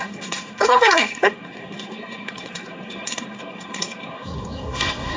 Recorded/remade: remade